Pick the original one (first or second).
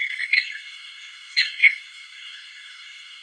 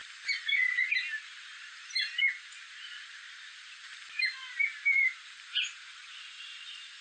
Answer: second